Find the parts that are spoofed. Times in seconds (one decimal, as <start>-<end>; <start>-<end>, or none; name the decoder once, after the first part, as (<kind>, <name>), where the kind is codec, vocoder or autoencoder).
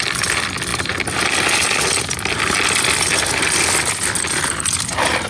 none